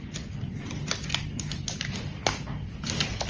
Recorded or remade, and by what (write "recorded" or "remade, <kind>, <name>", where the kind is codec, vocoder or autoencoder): recorded